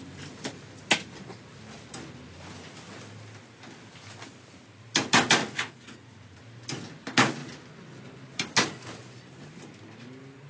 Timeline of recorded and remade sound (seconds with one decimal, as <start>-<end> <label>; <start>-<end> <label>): 0.0-5.4 recorded; 5.4-6.4 remade; 6.4-10.5 recorded